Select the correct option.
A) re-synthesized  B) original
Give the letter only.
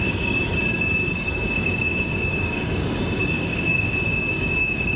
A